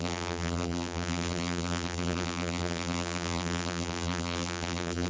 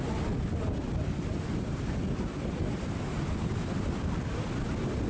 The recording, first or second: second